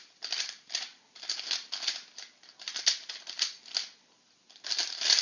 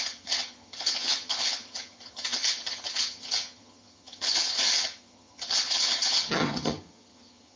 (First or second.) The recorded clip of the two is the first